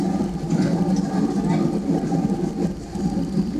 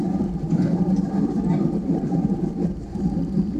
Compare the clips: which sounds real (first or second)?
first